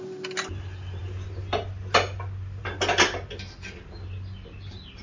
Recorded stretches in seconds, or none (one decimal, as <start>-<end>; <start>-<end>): 0.0-5.0